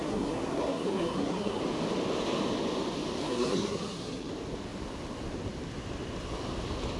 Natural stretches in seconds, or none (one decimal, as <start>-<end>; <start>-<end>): 1.6-3.2; 4.3-7.0